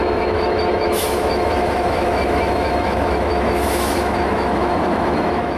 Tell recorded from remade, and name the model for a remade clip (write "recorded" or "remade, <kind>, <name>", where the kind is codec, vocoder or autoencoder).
remade, autoencoder, DAC-VAE